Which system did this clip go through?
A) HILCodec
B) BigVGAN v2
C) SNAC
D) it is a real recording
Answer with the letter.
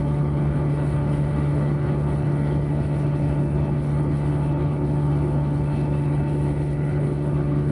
A